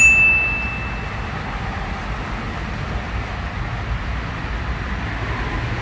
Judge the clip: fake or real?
real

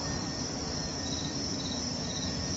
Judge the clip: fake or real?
fake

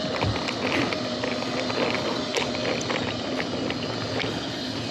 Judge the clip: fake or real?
real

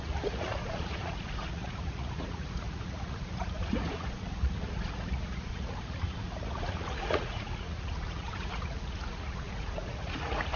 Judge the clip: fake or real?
fake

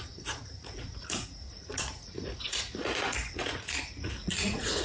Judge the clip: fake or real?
fake